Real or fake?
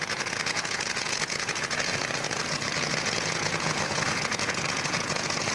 fake